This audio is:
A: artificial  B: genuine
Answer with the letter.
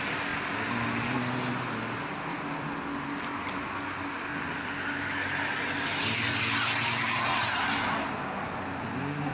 B